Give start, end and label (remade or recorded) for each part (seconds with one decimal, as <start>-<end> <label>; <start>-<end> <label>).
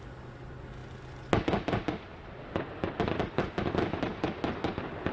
0.0-5.1 recorded